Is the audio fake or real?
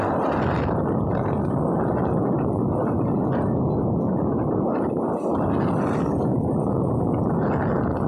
real